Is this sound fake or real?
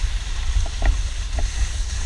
real